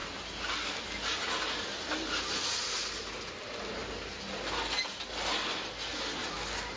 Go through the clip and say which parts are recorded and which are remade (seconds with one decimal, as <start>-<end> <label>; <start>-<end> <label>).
0.0-6.8 recorded